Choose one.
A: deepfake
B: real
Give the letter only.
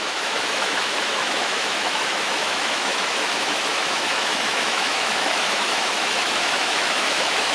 A